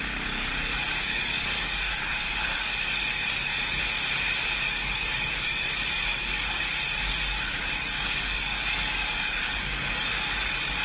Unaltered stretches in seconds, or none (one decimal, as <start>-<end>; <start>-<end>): 3.5-4.6